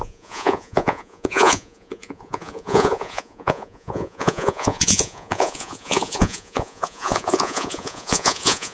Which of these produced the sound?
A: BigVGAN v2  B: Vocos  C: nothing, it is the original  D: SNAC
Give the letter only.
B